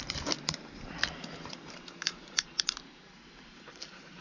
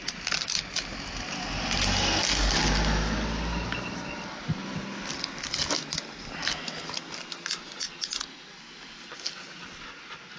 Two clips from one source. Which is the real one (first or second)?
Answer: second